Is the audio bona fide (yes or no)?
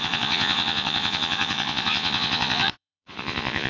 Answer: no